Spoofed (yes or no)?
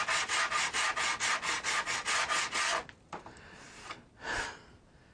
no